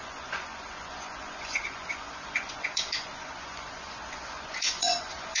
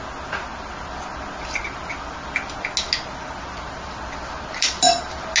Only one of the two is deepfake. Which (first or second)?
first